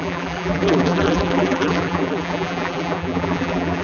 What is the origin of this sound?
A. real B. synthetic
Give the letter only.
B